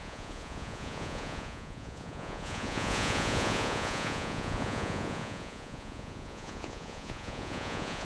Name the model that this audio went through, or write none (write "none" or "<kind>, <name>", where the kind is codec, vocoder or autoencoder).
vocoder, Vocos